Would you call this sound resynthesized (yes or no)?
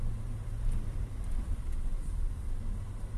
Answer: yes